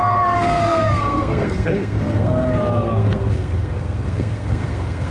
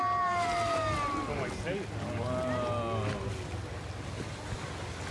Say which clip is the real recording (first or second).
second